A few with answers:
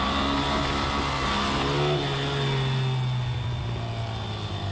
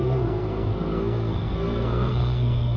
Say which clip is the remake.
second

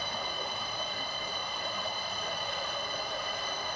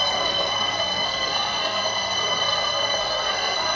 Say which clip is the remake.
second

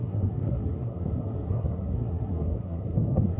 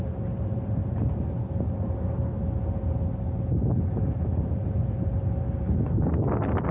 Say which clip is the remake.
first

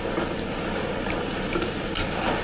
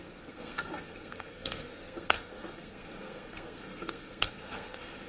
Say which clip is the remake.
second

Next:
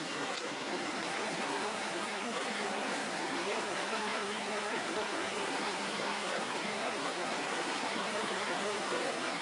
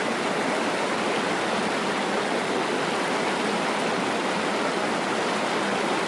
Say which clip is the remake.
first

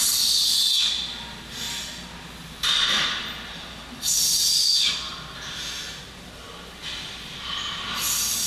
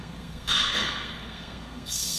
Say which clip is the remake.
second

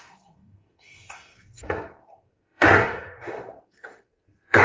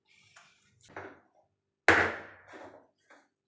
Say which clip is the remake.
first